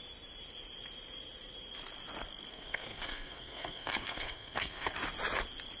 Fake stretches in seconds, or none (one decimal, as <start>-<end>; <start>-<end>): 2.5-4.9